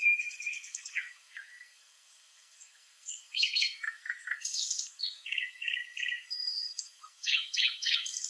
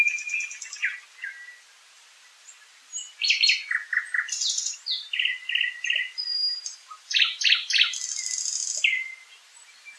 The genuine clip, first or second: second